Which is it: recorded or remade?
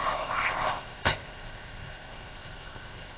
remade